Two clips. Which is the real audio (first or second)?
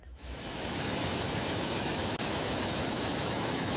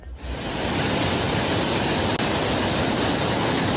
second